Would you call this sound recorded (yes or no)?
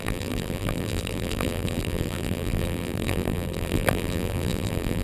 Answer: no